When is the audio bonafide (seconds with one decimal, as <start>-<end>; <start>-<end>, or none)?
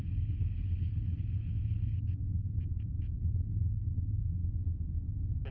4.4-5.5